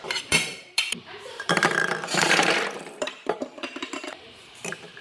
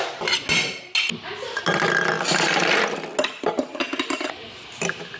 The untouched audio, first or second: second